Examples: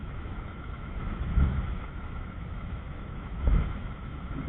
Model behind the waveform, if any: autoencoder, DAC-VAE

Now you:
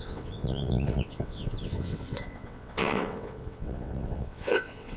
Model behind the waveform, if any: vocoder, WaveNeXt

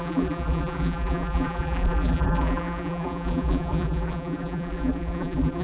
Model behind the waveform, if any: vocoder, BigVGAN v2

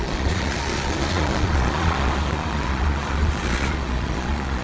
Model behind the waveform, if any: vocoder, Vocos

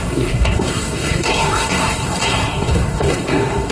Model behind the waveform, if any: codec, SNAC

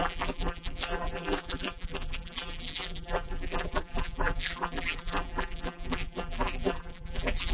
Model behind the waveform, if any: vocoder, BigVGAN v2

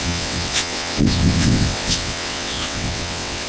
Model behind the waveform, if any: vocoder, WaveNeXt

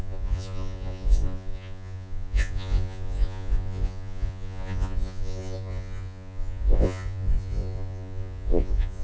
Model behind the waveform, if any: vocoder, Vocos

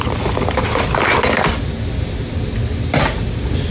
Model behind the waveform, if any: none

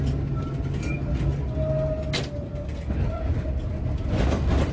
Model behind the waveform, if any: none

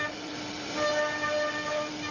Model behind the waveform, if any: none